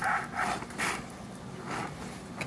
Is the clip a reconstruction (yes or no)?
no